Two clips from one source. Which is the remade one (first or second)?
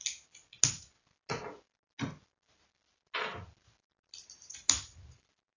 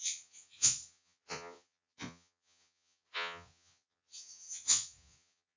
second